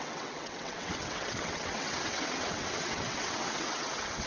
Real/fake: fake